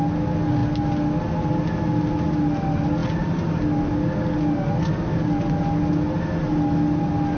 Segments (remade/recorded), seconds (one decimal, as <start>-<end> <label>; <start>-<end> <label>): 0.0-7.4 recorded